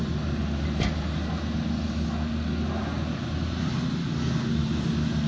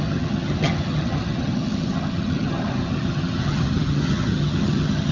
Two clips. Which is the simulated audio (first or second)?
second